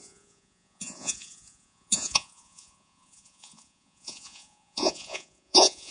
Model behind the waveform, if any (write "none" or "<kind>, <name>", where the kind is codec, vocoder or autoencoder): vocoder, Vocos